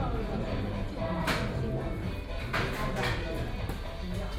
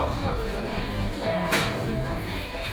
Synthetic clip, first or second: second